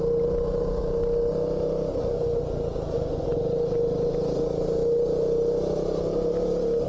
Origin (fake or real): real